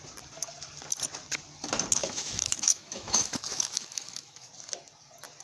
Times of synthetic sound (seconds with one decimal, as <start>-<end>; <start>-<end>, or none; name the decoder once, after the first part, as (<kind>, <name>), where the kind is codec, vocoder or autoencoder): 2.0-4.5 (autoencoder, DAC-VAE)